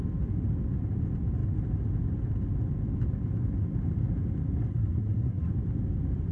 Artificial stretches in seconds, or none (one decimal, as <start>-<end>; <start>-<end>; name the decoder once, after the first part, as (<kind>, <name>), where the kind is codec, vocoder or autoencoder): 4.7-5.5 (codec, SNAC)